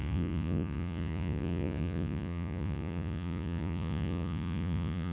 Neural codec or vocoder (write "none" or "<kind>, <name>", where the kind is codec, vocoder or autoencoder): vocoder, Vocos